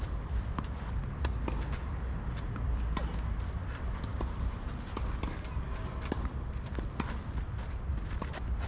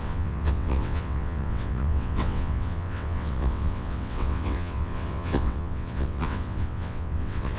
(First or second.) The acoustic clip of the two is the first